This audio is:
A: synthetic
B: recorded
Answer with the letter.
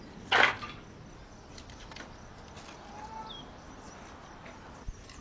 B